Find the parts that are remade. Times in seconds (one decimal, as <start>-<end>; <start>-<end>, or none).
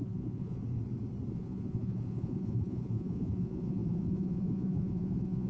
0.0-0.6; 1.3-5.5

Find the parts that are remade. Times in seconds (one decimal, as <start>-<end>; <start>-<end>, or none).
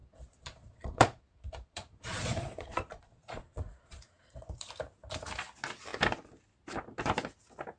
0.0-4.7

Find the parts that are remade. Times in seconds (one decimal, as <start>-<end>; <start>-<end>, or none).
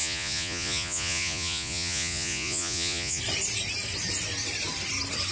0.0-3.2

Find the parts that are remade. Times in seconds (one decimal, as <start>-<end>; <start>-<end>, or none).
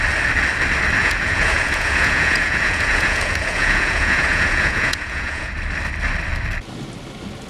1.0-5.5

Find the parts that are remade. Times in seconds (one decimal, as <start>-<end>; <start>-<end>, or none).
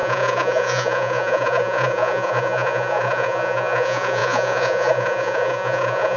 0.0-6.2